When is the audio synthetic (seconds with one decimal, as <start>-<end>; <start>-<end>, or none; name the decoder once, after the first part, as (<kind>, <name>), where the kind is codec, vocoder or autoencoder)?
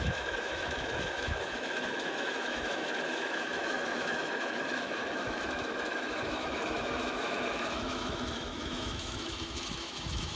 0.0-10.4 (autoencoder, DAC-VAE)